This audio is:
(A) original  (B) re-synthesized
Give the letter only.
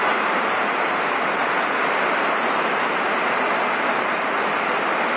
B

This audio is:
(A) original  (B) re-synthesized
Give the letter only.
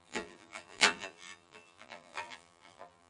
B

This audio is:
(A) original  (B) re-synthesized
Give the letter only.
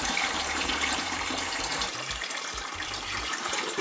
B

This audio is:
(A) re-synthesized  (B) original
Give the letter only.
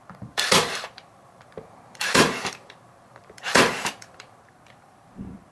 A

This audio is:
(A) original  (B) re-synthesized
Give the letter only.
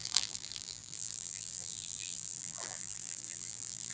B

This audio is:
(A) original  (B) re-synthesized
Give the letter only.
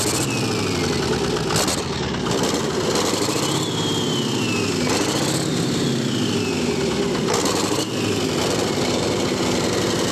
A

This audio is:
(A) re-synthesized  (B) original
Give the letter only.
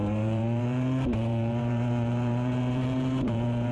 A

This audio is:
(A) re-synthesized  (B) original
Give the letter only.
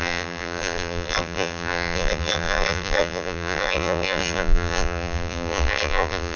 A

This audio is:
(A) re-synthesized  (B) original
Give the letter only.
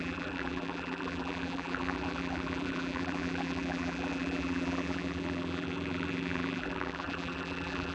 A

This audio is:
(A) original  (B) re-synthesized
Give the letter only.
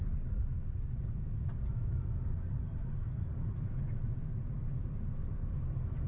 B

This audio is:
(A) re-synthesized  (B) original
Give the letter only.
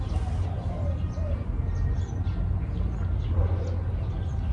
B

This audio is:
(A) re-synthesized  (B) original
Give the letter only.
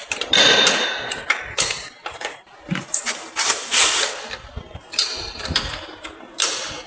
A